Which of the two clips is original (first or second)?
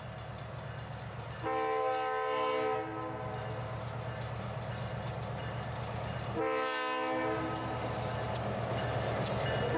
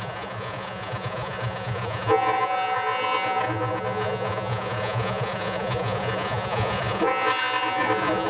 first